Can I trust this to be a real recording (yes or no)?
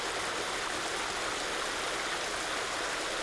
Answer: yes